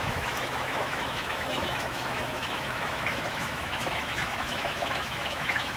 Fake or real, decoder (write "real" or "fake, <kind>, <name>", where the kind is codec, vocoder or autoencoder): fake, autoencoder, DAC-VAE